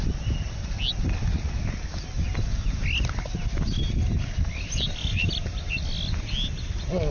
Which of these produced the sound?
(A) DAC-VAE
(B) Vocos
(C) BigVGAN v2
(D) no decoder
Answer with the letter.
D